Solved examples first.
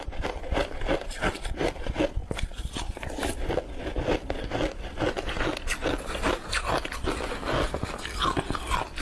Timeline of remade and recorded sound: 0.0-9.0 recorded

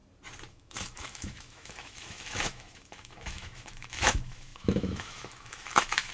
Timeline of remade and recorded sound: 0.0-0.5 recorded; 0.5-6.1 remade

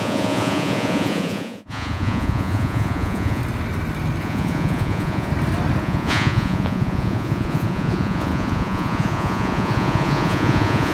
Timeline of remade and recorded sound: 0.0-3.4 remade; 3.4-4.2 recorded; 4.2-5.3 remade; 5.3-5.8 recorded; 5.8-10.9 remade

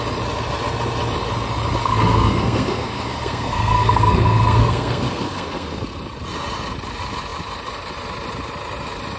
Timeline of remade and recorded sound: 0.0-1.8 recorded; 1.8-5.8 remade; 5.8-9.2 recorded

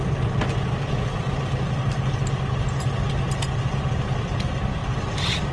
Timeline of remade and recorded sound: 0.0-1.1 recorded; 1.1-3.1 remade; 3.1-4.8 recorded; 4.8-5.5 remade